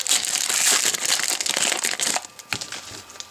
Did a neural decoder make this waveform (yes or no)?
no